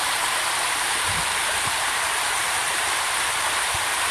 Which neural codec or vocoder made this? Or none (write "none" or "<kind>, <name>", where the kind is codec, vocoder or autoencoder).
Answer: vocoder, BigVGAN v2